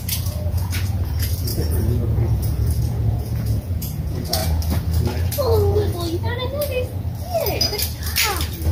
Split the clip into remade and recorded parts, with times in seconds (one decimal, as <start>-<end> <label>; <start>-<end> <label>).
0.0-4.4 remade; 4.4-8.7 recorded